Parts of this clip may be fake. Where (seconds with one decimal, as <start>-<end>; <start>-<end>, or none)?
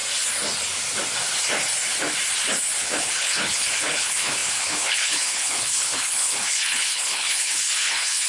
2.8-8.3